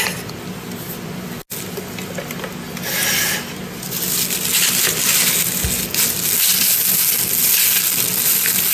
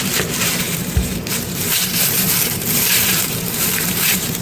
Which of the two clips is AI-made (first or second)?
second